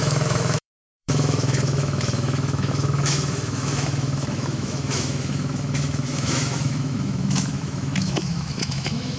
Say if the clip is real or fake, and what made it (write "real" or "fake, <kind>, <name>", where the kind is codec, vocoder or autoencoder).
fake, autoencoder, DAC-VAE